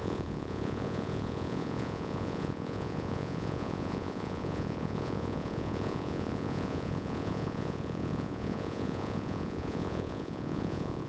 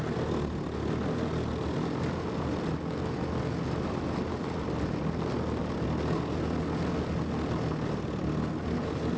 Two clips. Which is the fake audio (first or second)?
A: first